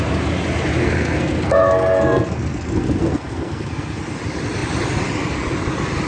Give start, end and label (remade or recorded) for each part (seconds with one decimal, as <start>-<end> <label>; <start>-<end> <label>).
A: 0.0-0.8 recorded; 0.8-4.0 remade; 4.0-6.1 recorded